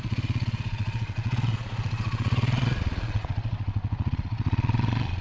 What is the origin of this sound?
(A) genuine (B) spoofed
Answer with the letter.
B